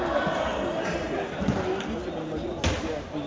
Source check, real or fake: real